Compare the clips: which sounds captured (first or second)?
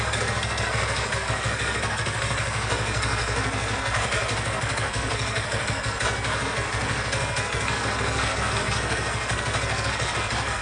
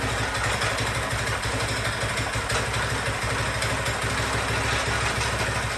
second